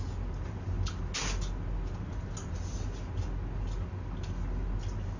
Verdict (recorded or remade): recorded